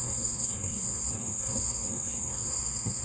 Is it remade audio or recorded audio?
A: remade